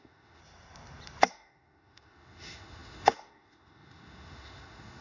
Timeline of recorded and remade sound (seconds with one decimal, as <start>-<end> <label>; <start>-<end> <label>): 0.0-0.4 remade; 0.4-1.3 recorded; 1.3-5.0 remade